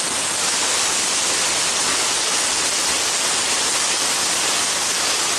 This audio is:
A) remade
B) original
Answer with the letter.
B